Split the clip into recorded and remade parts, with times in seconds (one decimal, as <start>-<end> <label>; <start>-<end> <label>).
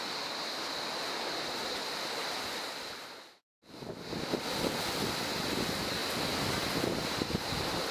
0.0-7.9 recorded